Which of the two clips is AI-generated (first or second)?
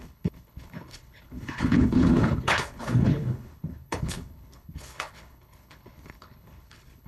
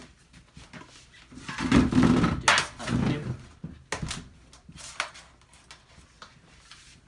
first